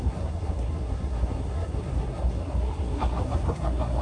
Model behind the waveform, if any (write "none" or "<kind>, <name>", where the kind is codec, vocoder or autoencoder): codec, SNAC